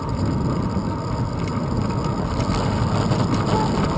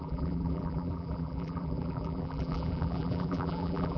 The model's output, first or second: second